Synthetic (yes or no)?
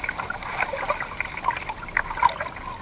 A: no